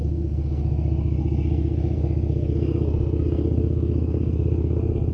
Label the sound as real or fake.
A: fake